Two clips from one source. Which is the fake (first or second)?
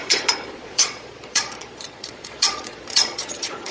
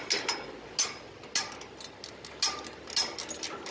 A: first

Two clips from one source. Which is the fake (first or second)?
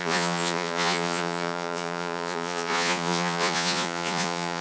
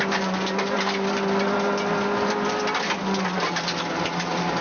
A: first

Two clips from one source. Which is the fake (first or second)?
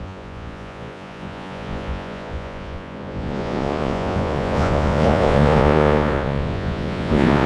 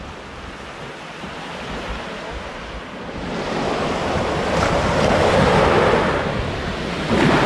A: first